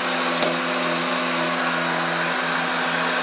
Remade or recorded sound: recorded